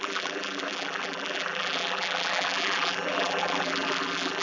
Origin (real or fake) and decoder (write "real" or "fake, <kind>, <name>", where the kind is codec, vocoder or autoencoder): fake, vocoder, BigVGAN v2